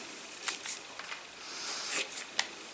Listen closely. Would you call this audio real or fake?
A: real